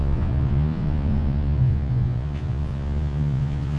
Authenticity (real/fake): fake